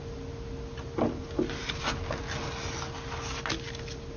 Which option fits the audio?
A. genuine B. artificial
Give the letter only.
A